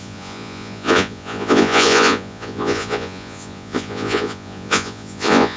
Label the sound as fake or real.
fake